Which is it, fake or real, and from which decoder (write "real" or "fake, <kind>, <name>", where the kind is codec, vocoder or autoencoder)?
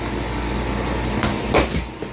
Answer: real